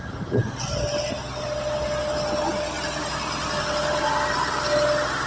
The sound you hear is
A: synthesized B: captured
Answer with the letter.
B